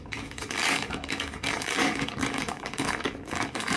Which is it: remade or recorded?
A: remade